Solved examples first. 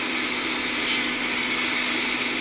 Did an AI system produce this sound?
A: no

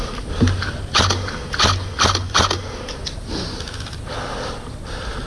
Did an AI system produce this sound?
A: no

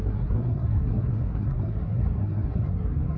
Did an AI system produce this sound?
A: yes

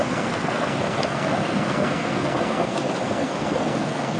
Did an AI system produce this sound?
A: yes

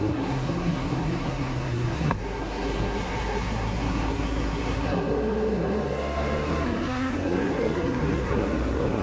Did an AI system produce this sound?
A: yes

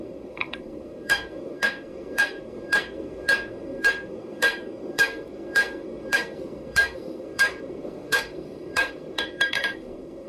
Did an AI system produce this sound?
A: yes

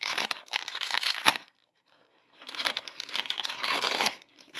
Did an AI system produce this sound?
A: yes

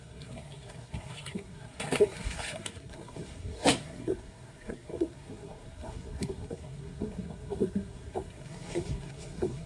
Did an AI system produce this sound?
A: yes